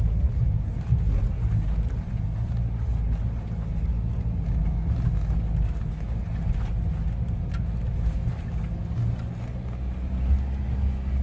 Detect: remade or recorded recorded